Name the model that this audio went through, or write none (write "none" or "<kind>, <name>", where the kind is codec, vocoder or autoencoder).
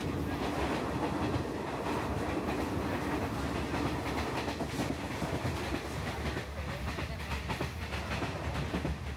none